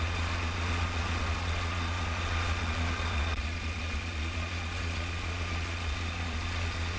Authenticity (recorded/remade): remade